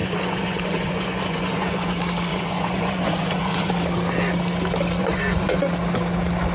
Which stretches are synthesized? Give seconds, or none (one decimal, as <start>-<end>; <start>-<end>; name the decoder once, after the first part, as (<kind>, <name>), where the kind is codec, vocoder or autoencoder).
0.0-1.9 (vocoder, Vocos); 2.3-3.7; 5.0-5.6